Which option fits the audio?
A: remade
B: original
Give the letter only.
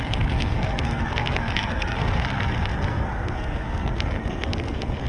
A